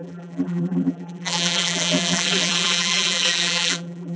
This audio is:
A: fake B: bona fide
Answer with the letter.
A